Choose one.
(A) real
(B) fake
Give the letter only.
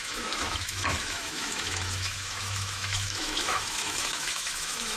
B